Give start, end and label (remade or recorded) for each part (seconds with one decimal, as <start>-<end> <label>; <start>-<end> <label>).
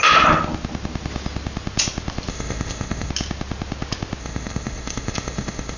0.0-2.3 recorded; 2.3-3.1 remade; 3.1-4.2 recorded; 4.2-5.8 remade